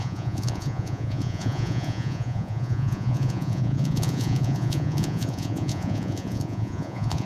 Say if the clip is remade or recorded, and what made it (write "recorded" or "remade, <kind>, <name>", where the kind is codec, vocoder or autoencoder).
remade, vocoder, Vocos